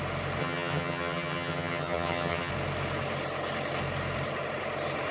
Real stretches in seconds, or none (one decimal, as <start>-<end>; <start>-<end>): 0.0-0.4; 2.5-5.1